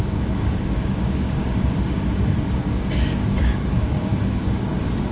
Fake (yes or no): yes